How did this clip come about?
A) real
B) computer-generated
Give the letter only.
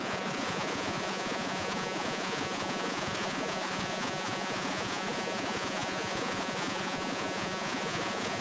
B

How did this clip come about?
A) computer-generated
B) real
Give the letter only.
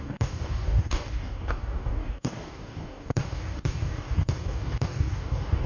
A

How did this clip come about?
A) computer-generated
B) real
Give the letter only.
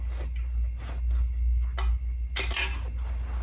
B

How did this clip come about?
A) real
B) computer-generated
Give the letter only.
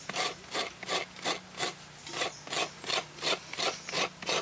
A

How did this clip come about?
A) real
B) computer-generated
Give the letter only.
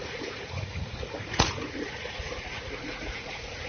B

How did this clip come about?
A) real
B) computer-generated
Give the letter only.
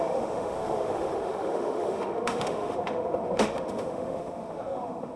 B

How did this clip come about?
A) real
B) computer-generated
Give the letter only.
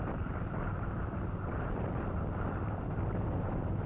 B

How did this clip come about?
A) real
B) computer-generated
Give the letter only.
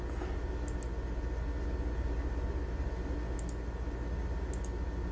A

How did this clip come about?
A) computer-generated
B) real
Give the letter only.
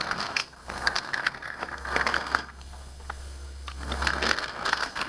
A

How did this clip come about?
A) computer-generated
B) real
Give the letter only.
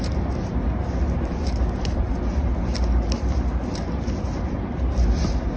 B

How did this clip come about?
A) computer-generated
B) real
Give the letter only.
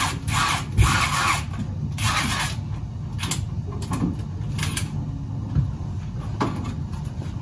B